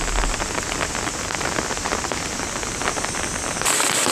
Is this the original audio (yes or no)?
yes